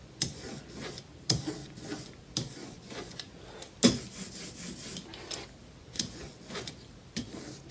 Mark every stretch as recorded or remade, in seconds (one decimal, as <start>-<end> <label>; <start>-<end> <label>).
0.0-1.0 remade; 1.0-1.6 recorded; 1.6-2.2 remade; 2.2-2.6 recorded; 2.6-3.3 remade; 3.3-5.8 recorded; 5.8-6.7 remade; 6.7-7.7 recorded